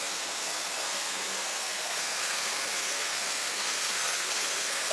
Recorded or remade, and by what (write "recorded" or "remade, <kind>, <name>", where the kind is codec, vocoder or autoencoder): remade, codec, SNAC